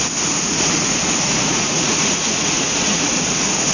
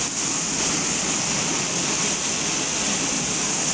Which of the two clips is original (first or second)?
second